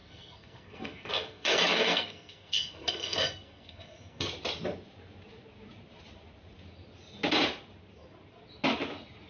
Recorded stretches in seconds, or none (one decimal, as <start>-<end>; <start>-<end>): 4.3-9.3